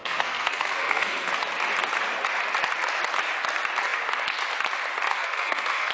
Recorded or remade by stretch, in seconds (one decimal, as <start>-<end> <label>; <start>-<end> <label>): 0.0-1.3 remade; 1.3-5.1 recorded; 5.1-5.9 remade